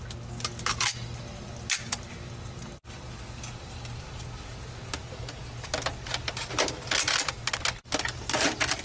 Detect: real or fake real